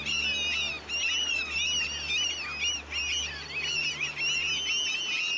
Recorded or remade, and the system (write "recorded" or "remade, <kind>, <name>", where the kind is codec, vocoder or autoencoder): recorded